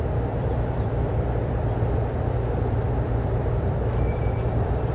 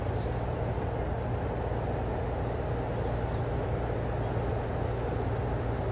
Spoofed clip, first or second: first